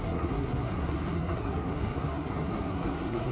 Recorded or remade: remade